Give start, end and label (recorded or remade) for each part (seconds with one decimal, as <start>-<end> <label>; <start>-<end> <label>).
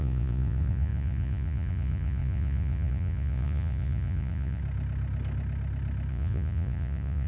0.0-4.6 remade; 4.6-6.1 recorded; 6.1-7.3 remade